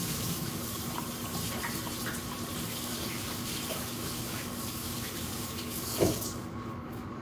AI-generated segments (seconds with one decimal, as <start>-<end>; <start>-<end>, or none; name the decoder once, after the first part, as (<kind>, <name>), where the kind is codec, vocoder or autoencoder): 0.0-0.8 (codec, DAC); 2.7-7.2